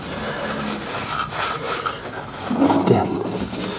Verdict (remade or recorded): recorded